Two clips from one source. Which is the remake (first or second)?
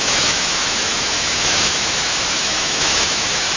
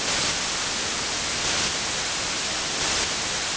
first